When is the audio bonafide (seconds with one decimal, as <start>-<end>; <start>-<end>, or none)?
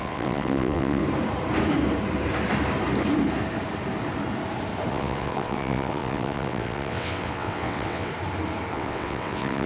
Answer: 1.0-4.9; 8.1-8.7